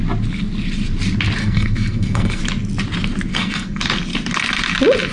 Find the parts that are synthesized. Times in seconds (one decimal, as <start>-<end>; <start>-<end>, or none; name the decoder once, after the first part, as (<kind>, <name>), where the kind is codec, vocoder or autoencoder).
1.4-2.4 (codec, SNAC); 3.3-3.8